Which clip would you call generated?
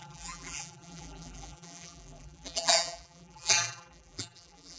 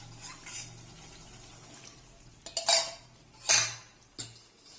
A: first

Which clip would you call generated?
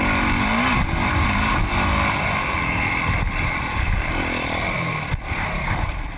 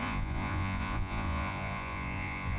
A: second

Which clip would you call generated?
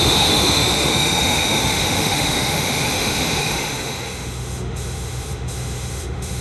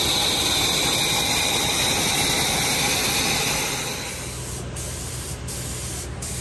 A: first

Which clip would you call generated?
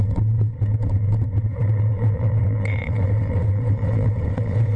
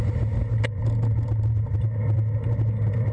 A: first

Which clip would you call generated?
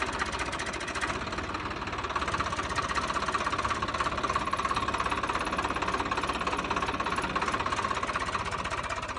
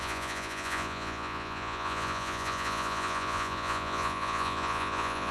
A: second